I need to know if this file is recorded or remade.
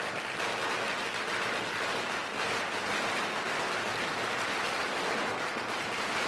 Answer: recorded